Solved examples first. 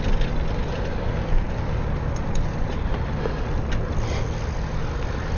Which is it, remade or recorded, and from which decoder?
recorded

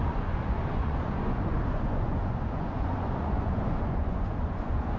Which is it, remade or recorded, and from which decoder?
remade, vocoder, Vocos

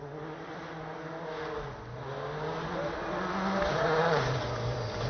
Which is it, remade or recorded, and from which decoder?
recorded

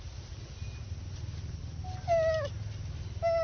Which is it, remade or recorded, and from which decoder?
recorded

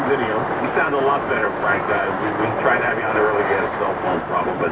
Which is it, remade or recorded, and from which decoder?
remade, vocoder, BigVGAN v2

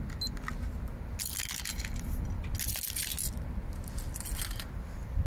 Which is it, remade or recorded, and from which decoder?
recorded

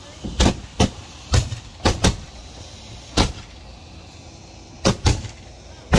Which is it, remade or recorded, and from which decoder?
recorded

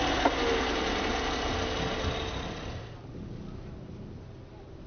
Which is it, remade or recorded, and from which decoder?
recorded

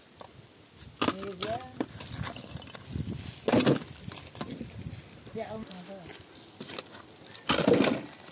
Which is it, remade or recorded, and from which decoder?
recorded